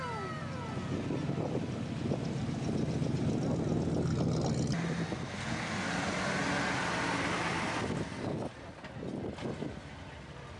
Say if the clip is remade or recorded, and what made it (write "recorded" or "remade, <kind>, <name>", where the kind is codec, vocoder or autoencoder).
recorded